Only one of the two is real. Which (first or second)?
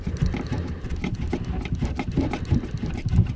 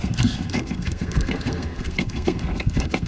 first